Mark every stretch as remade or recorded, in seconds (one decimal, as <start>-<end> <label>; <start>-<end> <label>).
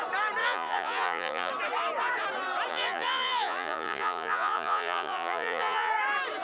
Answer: 0.0-0.4 recorded; 0.4-1.5 remade; 1.5-2.7 recorded; 2.7-5.9 remade; 5.9-6.4 recorded